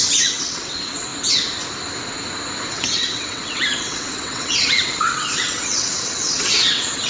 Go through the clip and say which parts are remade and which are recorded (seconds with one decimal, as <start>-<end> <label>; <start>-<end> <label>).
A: 0.0-1.1 remade; 1.1-2.7 recorded; 2.7-7.1 remade